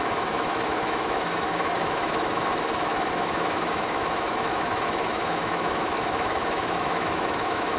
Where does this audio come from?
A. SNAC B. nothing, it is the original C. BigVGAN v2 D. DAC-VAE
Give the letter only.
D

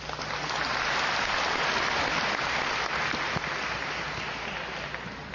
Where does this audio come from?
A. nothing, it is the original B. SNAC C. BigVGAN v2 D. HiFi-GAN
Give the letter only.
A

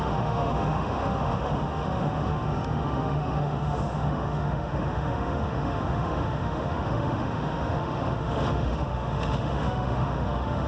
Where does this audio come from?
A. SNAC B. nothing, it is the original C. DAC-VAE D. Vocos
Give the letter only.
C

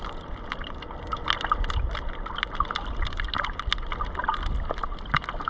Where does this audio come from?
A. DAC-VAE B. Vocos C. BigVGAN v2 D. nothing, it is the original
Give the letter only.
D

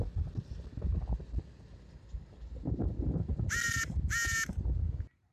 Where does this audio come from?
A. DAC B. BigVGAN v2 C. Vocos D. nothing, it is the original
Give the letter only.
D